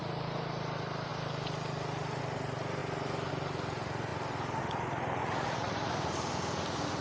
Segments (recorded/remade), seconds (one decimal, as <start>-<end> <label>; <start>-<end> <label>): 0.0-5.2 recorded; 5.2-5.9 remade; 5.9-7.0 recorded